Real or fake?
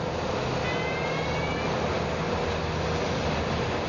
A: real